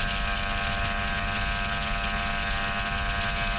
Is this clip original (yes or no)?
yes